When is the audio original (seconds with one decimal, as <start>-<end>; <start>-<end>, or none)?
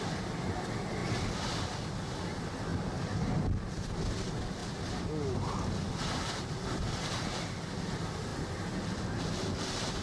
0.0-10.0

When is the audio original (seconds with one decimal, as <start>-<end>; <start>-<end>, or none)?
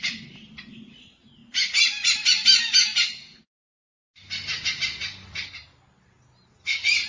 0.0-7.1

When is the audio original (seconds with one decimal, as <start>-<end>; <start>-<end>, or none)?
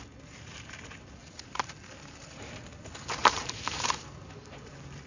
0.0-1.2; 1.7-3.2; 4.2-5.1